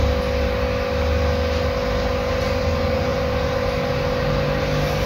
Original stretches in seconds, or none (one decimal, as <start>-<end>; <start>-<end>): 0.0-5.1